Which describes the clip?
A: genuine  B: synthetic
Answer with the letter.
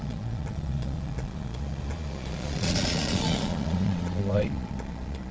B